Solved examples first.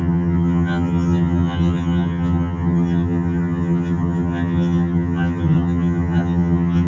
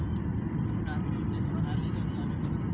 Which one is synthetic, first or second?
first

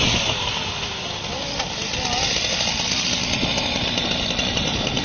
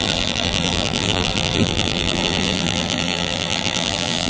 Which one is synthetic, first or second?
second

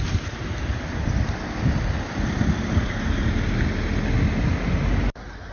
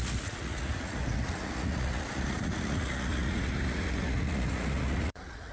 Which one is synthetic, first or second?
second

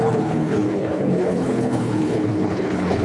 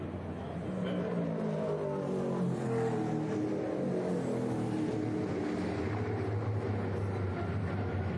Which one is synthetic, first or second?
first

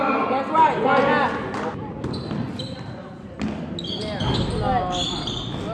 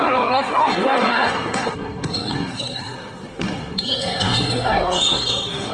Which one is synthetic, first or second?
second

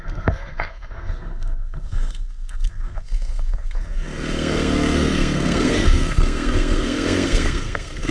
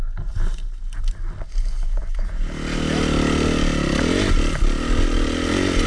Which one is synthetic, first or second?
first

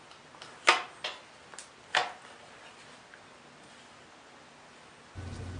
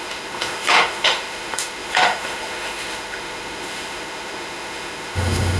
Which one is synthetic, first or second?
second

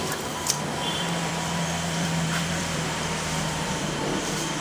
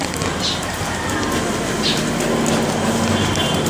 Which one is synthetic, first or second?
first